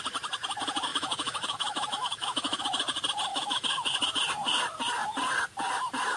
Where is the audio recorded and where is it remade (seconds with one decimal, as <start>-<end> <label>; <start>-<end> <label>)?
0.0-0.9 recorded; 0.9-2.6 remade; 2.6-3.3 recorded; 3.3-4.0 remade; 4.0-6.2 recorded